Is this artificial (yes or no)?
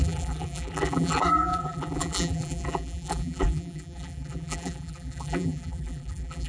yes